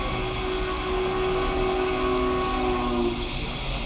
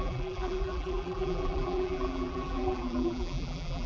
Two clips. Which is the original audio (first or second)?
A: first